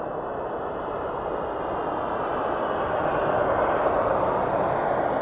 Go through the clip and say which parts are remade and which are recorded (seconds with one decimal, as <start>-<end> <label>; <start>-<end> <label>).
0.0-5.2 recorded